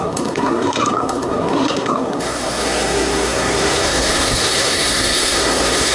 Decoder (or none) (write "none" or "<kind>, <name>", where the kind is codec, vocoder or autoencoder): codec, SNAC